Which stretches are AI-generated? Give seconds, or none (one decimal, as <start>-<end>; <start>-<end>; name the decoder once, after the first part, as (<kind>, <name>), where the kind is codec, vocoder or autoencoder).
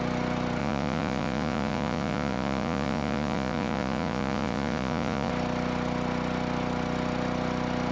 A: 0.6-5.3 (vocoder, Vocos)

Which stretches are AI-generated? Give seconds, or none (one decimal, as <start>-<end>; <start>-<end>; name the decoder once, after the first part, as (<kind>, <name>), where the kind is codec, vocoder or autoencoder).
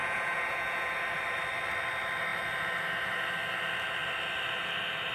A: 0.0-0.9 (vocoder, Vocos)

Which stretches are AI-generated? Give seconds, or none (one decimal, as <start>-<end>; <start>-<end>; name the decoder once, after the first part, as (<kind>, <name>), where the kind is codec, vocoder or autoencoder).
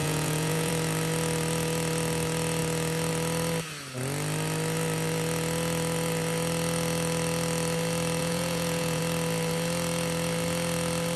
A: 0.0-0.7 (vocoder, Vocos); 8.2-9.0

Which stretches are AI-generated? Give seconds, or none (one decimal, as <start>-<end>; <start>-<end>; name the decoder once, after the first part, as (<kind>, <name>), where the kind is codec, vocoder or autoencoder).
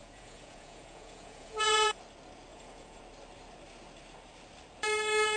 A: 0.0-2.0 (vocoder, Vocos); 2.5-3.0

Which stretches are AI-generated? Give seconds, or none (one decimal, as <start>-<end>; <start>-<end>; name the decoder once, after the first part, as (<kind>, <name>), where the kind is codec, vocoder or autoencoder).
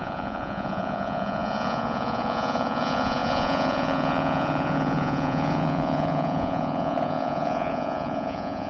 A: 0.0-8.7 (vocoder, Vocos)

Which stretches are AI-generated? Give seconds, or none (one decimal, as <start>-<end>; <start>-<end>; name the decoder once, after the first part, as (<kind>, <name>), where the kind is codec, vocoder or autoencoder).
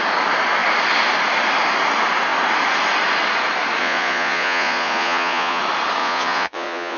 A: 3.8-5.6 (vocoder, Vocos); 6.0-7.0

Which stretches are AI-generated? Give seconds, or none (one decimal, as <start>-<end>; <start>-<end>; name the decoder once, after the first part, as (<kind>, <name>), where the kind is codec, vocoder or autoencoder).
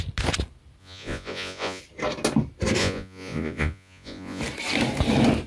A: 0.8-1.8 (vocoder, Vocos); 2.8-4.4